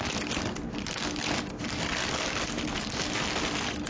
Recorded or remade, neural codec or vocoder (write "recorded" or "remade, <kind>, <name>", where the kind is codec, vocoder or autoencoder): recorded